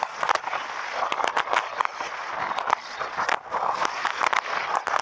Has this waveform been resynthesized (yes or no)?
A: no